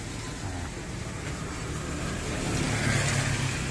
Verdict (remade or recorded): recorded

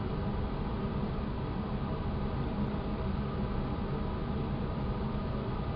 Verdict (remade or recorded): recorded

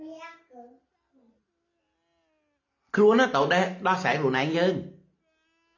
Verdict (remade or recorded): recorded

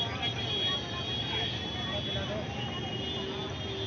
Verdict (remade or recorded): recorded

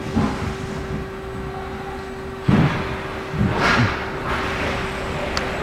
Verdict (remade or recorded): recorded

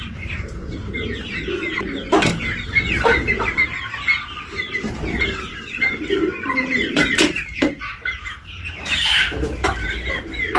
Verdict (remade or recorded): remade